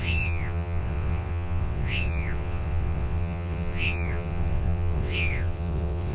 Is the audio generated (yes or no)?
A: yes